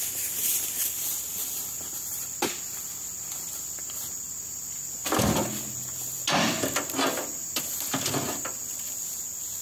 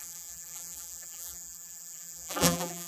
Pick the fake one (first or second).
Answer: second